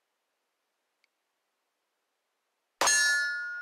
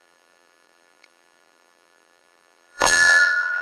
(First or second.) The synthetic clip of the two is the second